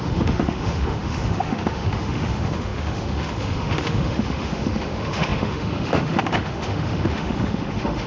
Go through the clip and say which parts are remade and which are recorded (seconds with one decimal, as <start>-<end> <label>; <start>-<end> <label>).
0.0-8.1 remade